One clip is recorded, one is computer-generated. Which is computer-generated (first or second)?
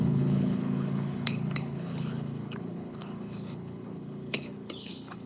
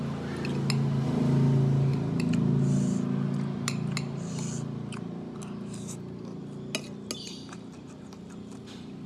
first